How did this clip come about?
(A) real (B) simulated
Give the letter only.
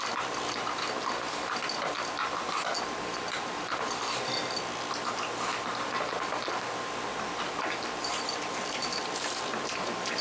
A